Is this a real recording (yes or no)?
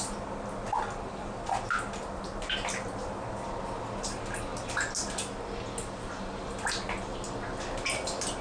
yes